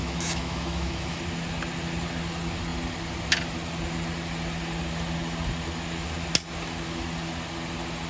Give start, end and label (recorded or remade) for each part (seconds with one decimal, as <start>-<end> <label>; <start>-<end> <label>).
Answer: 0.0-1.2 remade; 1.2-8.1 recorded